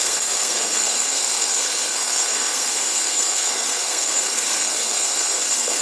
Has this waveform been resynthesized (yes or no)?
yes